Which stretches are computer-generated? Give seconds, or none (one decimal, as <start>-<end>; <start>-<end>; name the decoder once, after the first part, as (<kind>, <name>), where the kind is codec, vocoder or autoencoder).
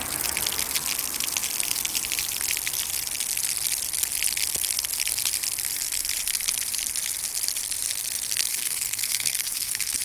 8.5-10.0 (codec, SNAC)